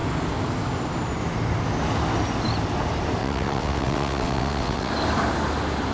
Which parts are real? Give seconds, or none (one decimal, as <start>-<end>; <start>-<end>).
0.0-3.2; 4.9-5.9